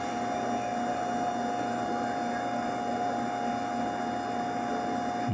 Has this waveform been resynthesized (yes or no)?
no